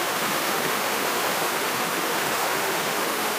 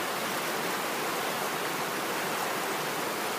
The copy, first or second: first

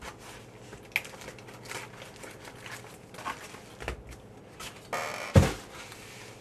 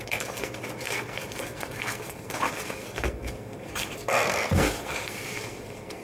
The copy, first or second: second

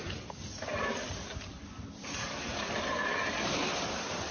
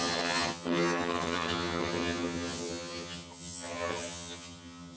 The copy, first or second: second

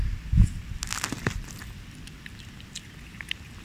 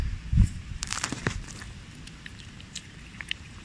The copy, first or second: second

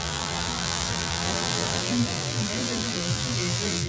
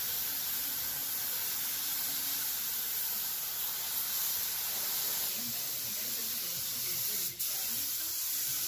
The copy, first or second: first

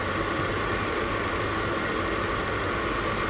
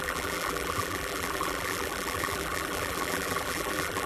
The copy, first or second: second